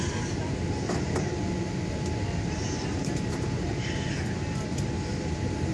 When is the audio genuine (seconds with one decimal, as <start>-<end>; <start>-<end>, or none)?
0.0-2.6; 4.1-5.7